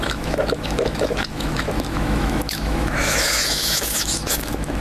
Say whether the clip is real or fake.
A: fake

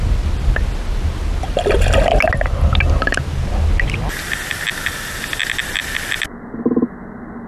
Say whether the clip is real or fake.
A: real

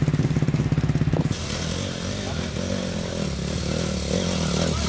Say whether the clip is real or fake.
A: real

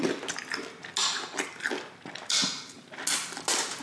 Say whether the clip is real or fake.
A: real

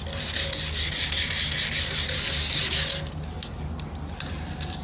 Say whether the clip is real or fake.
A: real